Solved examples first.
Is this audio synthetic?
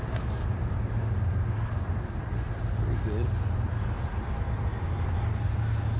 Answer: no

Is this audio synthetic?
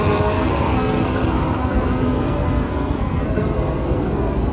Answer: yes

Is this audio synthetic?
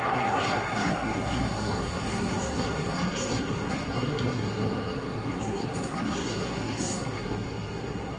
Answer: yes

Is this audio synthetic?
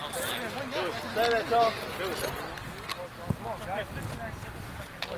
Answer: no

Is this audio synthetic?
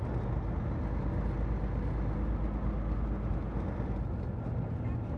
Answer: no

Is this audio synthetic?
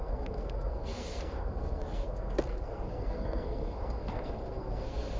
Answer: yes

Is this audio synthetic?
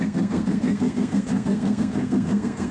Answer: yes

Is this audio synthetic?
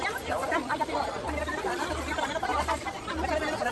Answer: no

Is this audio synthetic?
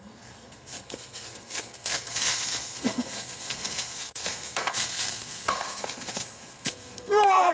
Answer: yes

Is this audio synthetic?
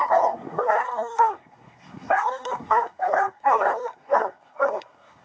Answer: yes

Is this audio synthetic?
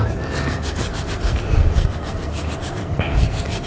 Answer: yes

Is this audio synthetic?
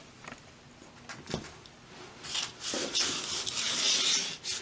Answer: no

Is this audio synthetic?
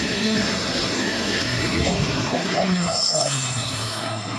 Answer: yes